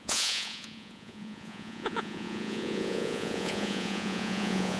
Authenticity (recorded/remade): remade